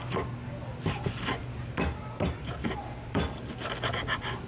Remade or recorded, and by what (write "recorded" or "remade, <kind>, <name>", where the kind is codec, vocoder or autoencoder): recorded